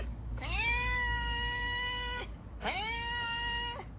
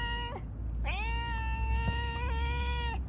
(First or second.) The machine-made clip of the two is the first